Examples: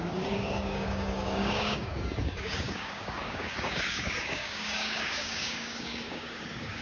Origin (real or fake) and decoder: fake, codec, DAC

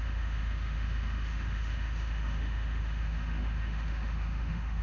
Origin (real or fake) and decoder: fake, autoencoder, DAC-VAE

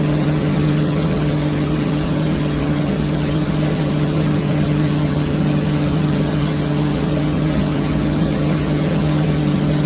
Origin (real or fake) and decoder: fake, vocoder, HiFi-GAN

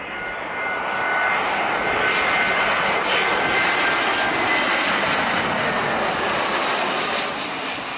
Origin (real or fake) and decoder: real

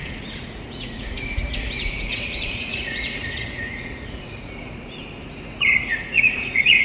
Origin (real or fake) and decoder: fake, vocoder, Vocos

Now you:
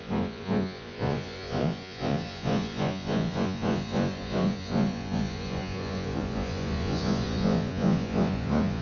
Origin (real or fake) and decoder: fake, vocoder, Vocos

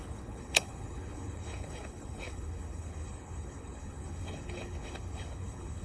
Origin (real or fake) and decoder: fake, codec, HILCodec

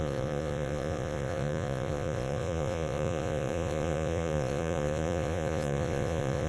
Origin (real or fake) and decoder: fake, vocoder, Vocos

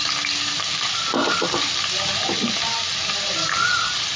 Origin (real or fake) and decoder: real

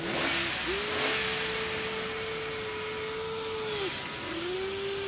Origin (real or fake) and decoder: real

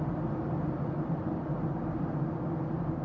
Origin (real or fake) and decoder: real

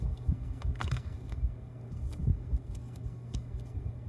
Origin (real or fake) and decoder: fake, codec, SNAC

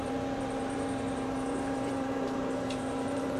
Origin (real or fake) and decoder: fake, vocoder, BigVGAN v2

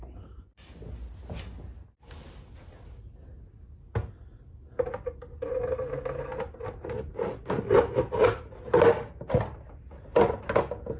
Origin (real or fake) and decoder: real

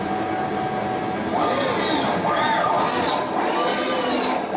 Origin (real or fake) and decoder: real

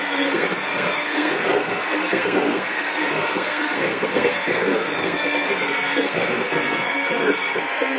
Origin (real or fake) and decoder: fake, codec, SNAC